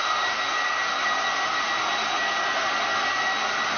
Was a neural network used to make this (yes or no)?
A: no